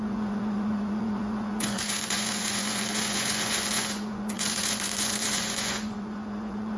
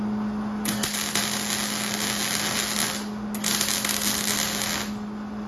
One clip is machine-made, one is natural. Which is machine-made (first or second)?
first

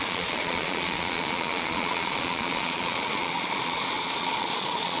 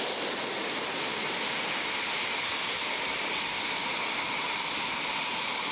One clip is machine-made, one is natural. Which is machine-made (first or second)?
first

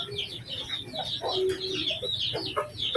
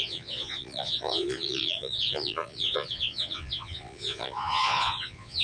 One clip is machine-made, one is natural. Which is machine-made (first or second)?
second